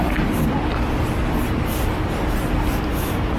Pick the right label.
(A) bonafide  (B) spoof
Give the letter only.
A